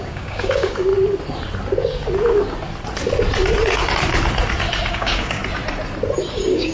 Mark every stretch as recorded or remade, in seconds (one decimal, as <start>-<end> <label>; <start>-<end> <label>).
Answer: 0.0-0.9 remade; 0.9-4.9 recorded; 4.9-5.4 remade; 5.4-6.3 recorded; 6.3-6.7 remade